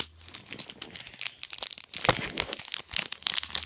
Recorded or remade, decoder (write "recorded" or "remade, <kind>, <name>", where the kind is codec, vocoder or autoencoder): recorded